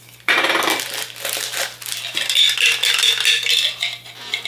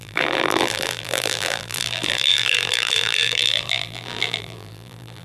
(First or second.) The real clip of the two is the first